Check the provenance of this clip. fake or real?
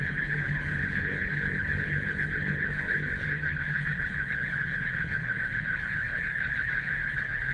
fake